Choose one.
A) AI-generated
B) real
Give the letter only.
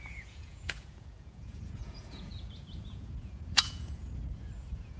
A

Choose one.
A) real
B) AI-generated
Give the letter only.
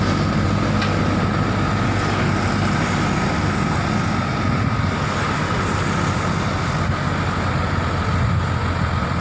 A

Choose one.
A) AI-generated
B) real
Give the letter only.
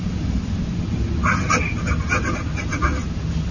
B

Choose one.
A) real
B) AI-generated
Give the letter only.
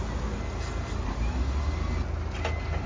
A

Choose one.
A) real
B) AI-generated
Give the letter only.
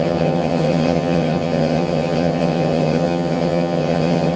B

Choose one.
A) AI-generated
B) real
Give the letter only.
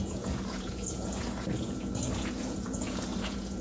A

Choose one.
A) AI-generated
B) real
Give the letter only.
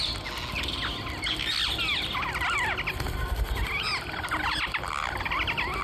B